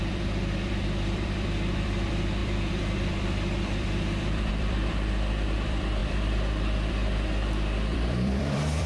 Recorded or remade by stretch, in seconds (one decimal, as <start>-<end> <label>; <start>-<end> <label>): 0.0-8.9 remade